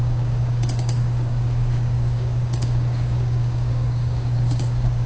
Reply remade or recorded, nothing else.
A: remade